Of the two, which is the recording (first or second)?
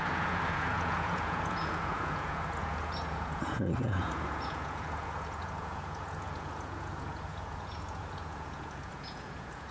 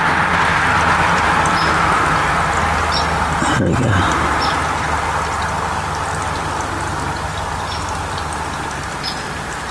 second